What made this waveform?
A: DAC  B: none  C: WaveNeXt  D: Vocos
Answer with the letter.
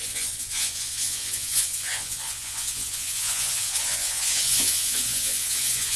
D